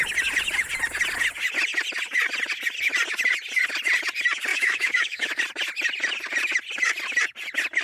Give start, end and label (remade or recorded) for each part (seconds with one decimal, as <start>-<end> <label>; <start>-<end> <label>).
0.0-4.5 recorded; 4.5-5.4 remade; 5.4-7.8 recorded

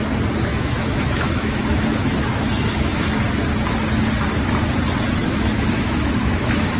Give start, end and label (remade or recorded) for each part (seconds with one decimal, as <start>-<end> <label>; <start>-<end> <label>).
0.0-0.5 recorded; 0.5-3.1 remade; 3.1-5.2 recorded; 5.2-6.8 remade

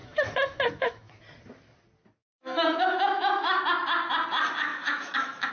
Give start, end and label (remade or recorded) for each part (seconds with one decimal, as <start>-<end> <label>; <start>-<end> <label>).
0.0-1.2 remade; 1.2-2.2 recorded; 2.2-3.6 remade; 3.6-4.7 recorded; 4.7-5.5 remade